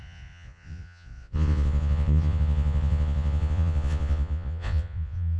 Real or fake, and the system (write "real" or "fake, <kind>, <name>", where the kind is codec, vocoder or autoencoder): fake, vocoder, Vocos